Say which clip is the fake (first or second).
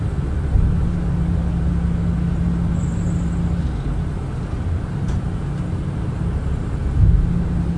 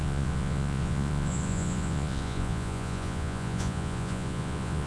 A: second